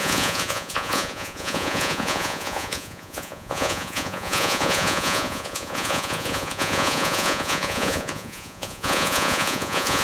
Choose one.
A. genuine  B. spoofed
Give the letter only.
B